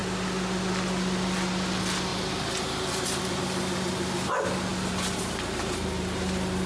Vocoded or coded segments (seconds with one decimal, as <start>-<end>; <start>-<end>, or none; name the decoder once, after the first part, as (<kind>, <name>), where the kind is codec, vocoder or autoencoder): none